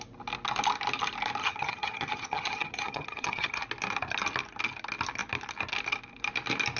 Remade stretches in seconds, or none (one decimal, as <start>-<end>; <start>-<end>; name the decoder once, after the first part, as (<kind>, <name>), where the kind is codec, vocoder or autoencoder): 1.4-3.6 (vocoder, HiFi-GAN)